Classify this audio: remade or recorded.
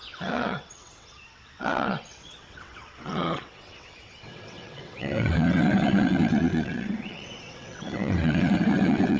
remade